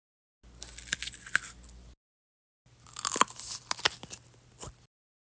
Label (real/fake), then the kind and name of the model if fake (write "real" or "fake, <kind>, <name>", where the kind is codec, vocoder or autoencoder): real